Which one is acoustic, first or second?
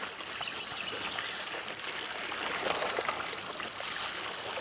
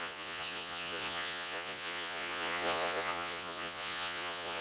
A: first